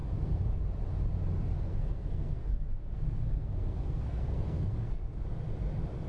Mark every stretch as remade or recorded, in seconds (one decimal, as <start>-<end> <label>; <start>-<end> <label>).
0.0-0.6 remade; 0.6-1.5 recorded; 1.5-5.2 remade; 5.2-6.1 recorded

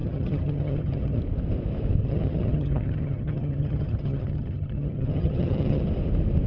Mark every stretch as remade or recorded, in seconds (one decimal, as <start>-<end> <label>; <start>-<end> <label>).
0.0-1.2 remade; 1.2-2.0 recorded; 2.0-5.9 remade; 5.9-6.5 recorded

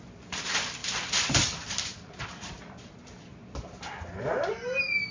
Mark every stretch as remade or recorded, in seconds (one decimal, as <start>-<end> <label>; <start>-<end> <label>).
0.0-0.8 recorded; 0.8-3.8 remade; 3.8-5.1 recorded

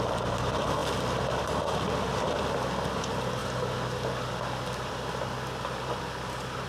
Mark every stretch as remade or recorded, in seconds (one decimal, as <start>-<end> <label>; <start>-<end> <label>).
0.0-6.7 recorded

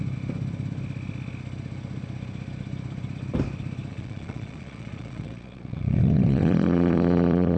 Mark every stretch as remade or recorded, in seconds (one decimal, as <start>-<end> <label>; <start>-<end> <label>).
0.0-3.9 recorded; 3.9-7.6 remade

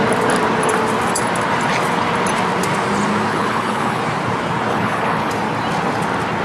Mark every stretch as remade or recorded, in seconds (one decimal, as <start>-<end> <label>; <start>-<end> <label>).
0.0-3.3 recorded; 3.3-4.0 remade; 4.0-4.7 recorded; 4.7-5.3 remade; 5.3-6.4 recorded

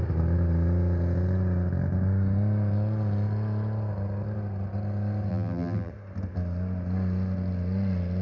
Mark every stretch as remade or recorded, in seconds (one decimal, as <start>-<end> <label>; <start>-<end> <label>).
0.0-5.3 recorded; 5.3-5.9 remade; 5.9-8.2 recorded